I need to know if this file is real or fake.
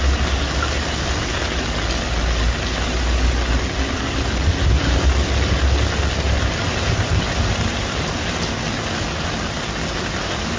real